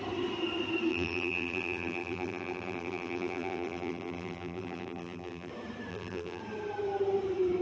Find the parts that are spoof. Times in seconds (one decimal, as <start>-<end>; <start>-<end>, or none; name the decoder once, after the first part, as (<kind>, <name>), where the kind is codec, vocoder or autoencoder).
0.9-5.5 (vocoder, BigVGAN v2); 5.9-6.4

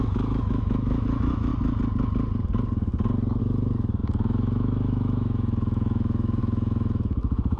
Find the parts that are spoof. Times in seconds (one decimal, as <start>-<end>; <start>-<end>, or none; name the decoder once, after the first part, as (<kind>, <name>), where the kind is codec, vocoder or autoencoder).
0.0-1.5 (autoencoder, DAC-VAE); 3.4-7.6